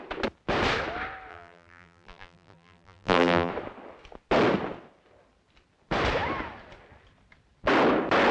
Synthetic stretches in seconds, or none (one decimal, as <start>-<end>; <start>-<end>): 1.3-3.5